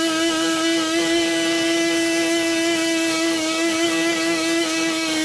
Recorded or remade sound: remade